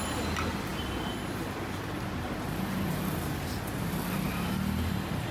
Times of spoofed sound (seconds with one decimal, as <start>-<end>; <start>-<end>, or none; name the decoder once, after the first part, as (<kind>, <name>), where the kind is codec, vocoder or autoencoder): none